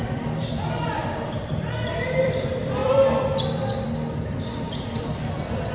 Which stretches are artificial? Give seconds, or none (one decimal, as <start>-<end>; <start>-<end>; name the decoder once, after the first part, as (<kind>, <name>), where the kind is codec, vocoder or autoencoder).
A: 0.0-1.0 (vocoder, BigVGAN v2); 2.2-5.7